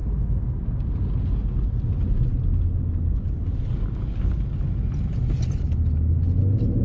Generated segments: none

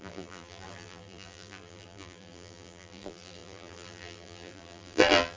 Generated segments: 0.0-5.4 (vocoder, BigVGAN v2)

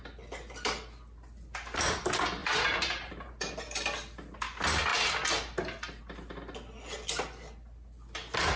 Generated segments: 2.4-3.5 (vocoder, BigVGAN v2)

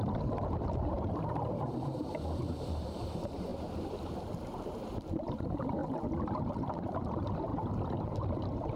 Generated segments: 0.0-5.8 (vocoder, BigVGAN v2); 6.4-7.5; 8.0-8.8

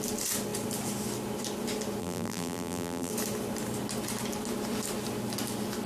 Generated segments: 2.0-3.1 (vocoder, BigVGAN v2)